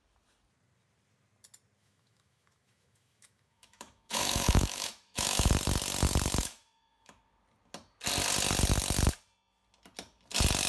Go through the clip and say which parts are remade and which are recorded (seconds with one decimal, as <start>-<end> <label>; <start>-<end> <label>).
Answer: 0.0-1.8 recorded; 1.8-5.5 remade; 5.5-6.4 recorded; 6.4-7.2 remade; 7.2-10.7 recorded